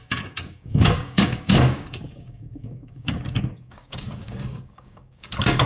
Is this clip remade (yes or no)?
yes